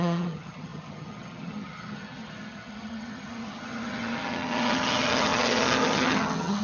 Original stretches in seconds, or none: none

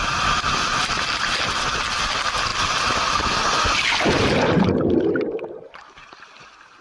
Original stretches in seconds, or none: 0.0-6.8

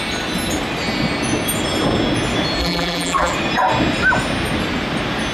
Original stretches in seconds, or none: 0.0-2.6; 3.3-5.3

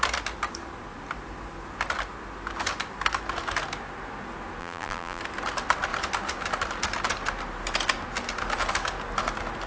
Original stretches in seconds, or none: 0.0-4.6; 5.2-9.7

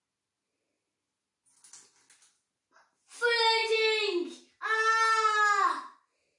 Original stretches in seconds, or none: 0.0-6.4

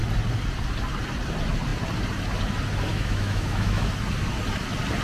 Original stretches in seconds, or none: 0.0-2.9; 3.9-5.0